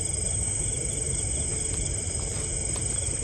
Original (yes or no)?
yes